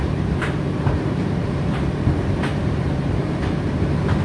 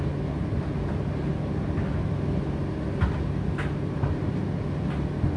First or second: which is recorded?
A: second